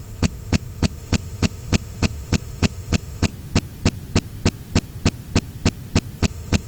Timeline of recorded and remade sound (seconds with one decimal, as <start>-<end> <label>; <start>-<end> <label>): 0.0-3.3 remade; 3.3-6.2 recorded; 6.2-6.7 remade